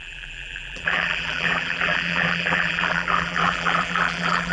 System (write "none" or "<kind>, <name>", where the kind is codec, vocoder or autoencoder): vocoder, BigVGAN v2